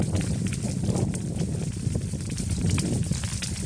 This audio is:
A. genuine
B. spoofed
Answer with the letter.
A